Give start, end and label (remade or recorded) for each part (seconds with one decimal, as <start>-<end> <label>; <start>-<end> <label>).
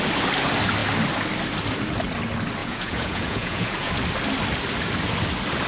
0.0-2.6 recorded; 2.6-3.9 remade; 3.9-5.7 recorded